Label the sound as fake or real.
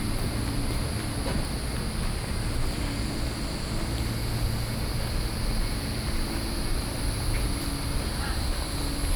real